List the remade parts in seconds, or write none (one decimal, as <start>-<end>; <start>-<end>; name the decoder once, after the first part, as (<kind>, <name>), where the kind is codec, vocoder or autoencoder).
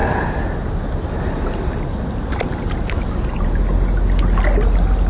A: none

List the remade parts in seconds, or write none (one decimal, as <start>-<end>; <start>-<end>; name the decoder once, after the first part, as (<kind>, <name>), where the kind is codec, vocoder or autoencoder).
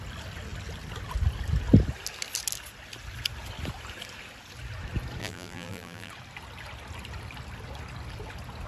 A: 5.2-6.1 (vocoder, BigVGAN v2)